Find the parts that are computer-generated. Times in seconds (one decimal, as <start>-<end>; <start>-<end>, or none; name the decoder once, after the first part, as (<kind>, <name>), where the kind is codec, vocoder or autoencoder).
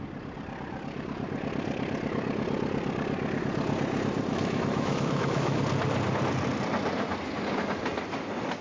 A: 4.3-5.6 (autoencoder, DAC-VAE)